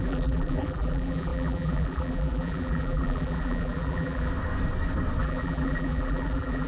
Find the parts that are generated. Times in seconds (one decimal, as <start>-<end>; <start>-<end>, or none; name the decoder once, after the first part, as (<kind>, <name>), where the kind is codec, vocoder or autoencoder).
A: 0.0-4.3 (vocoder, BigVGAN v2); 5.2-6.7